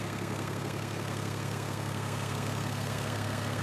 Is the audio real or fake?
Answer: fake